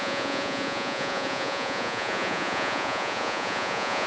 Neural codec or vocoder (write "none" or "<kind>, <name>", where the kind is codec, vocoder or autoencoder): vocoder, Vocos